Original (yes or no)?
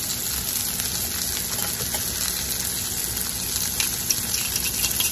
yes